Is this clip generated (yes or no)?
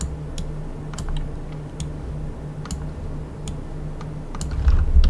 no